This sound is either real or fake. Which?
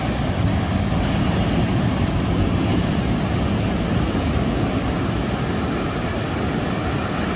real